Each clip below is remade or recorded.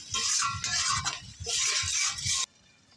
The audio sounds recorded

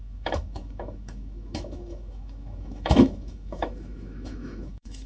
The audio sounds remade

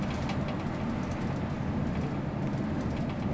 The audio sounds recorded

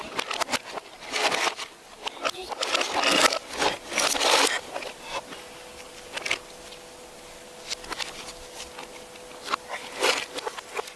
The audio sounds recorded